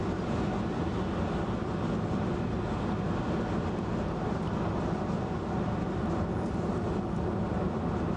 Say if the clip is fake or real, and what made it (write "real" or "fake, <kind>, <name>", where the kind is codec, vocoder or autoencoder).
real